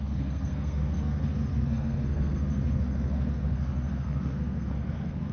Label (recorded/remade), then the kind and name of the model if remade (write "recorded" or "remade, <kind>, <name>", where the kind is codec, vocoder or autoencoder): remade, codec, SNAC